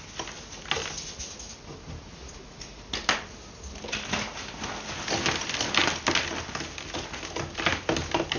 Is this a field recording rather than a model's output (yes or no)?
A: yes